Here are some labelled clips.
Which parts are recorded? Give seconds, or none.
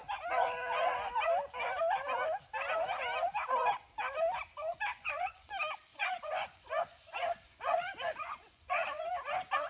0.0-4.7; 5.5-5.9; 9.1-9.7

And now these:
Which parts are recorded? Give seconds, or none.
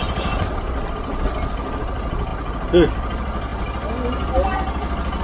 0.0-5.2